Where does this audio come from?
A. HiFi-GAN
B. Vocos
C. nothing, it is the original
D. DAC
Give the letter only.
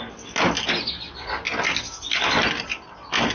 C